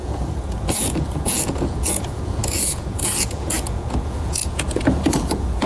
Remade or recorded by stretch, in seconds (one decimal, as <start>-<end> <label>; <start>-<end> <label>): 0.0-5.7 remade